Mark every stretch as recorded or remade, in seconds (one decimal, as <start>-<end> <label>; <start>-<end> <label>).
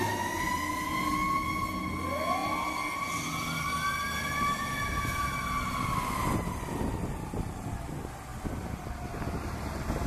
0.0-8.3 recorded; 8.3-8.9 remade; 8.9-10.1 recorded